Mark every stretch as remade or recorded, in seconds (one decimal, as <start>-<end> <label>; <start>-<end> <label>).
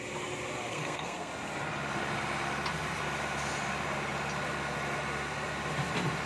0.0-0.7 recorded; 0.7-1.3 remade; 1.3-6.3 recorded